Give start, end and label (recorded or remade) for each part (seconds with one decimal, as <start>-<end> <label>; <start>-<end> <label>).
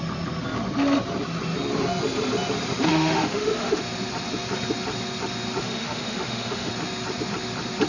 0.0-2.9 recorded; 2.9-3.8 remade; 3.8-5.6 recorded; 5.6-6.7 remade; 6.7-7.9 recorded